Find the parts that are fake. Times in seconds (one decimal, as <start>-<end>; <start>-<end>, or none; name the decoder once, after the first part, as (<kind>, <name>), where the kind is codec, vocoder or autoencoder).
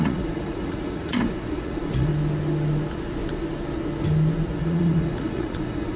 0.0-2.1 (vocoder, Vocos); 4.6-6.0